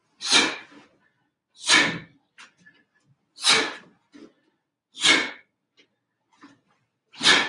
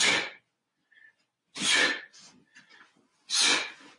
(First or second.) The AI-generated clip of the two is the second